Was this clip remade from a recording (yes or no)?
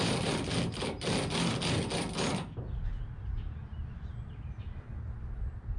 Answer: no